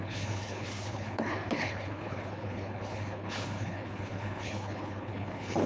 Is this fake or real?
fake